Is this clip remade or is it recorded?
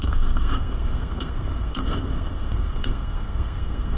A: remade